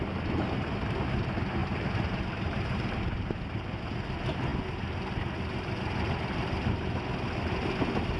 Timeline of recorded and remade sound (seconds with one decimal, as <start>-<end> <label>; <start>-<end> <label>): 0.0-1.6 recorded; 1.6-3.9 remade; 3.9-8.2 recorded